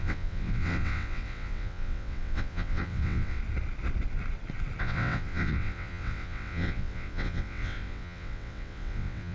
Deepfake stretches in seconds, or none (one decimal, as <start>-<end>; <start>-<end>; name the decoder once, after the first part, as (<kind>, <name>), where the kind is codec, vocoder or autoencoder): 0.0-3.4 (vocoder, WaveNeXt); 4.8-9.3